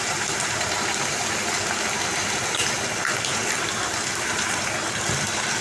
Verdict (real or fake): fake